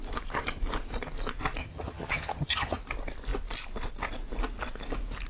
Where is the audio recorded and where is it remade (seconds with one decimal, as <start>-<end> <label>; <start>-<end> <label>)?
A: 0.0-1.6 recorded; 1.6-2.8 remade; 2.8-5.3 recorded